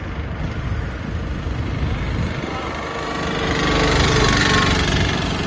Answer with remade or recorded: recorded